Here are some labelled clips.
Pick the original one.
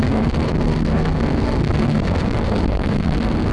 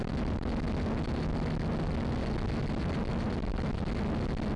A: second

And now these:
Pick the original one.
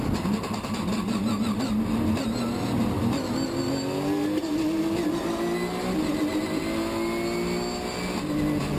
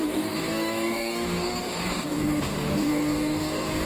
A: first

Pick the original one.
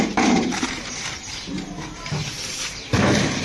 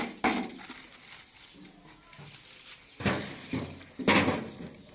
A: second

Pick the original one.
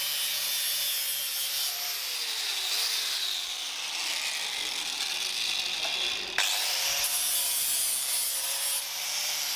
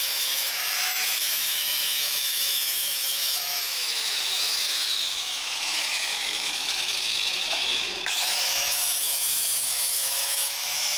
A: first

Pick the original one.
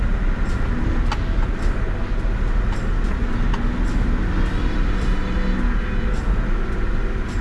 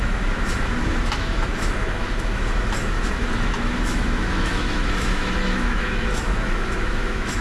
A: first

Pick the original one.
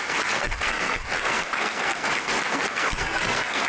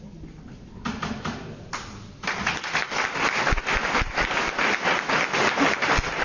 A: second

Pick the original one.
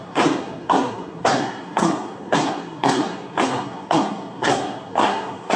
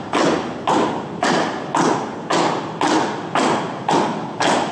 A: second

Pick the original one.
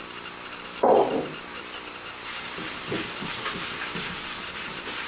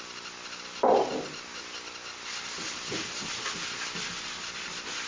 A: second